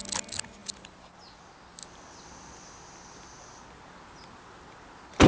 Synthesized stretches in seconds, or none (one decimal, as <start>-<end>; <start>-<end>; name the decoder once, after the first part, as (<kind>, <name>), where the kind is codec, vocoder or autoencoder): none